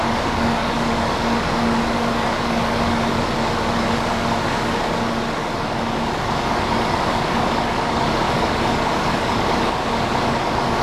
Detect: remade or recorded remade